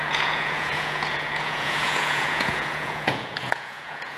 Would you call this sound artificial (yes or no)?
yes